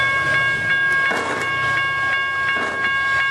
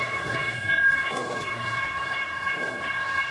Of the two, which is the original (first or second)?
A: first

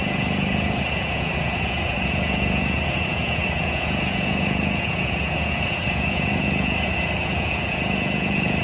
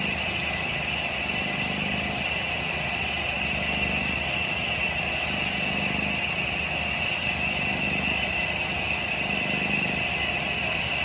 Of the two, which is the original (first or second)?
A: second